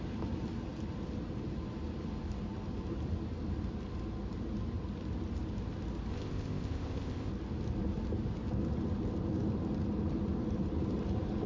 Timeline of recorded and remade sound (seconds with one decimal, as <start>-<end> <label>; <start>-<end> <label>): 0.0-6.1 recorded; 6.1-7.3 remade; 7.3-11.5 recorded